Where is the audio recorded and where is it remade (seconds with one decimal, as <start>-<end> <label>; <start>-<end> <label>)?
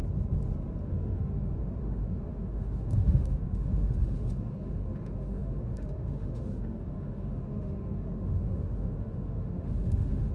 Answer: 0.0-0.8 recorded; 0.8-10.3 remade